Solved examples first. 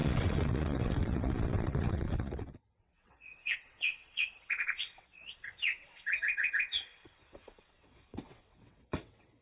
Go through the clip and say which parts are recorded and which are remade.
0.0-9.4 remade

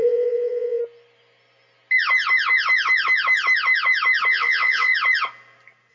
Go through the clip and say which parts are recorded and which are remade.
0.0-0.8 remade; 0.8-4.3 recorded; 4.3-4.9 remade; 4.9-5.9 recorded

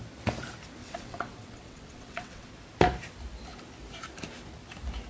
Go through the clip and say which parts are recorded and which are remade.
0.0-0.8 recorded; 0.8-2.5 remade; 2.5-5.1 recorded

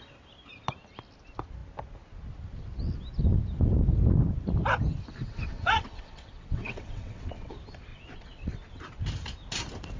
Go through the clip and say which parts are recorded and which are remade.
0.0-5.2 recorded; 5.2-7.5 remade; 7.5-7.9 recorded; 7.9-8.8 remade; 8.8-10.0 recorded

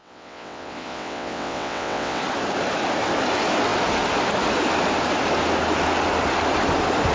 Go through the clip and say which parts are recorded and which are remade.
0.0-2.2 remade; 2.2-7.1 recorded

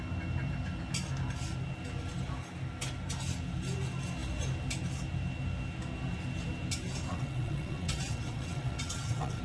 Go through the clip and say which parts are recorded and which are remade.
0.0-7.1 recorded; 7.1-9.4 remade

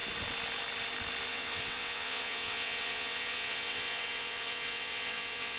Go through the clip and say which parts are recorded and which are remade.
0.0-1.3 recorded; 1.3-5.6 remade

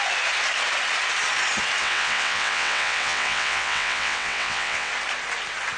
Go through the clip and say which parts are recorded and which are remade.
0.0-1.8 recorded; 1.8-4.9 remade; 4.9-5.8 recorded